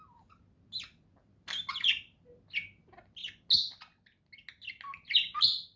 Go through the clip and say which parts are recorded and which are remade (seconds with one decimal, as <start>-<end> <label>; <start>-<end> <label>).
0.0-5.8 recorded